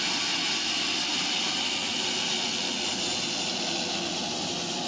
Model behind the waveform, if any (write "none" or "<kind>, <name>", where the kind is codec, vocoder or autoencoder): none